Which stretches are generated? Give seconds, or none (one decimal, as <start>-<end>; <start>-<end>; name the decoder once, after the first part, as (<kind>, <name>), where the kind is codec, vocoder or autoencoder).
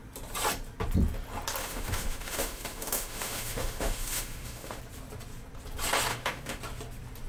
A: 1.6-4.8 (autoencoder, DAC-VAE); 6.1-6.6